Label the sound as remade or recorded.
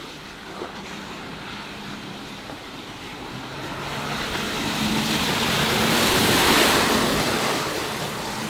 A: remade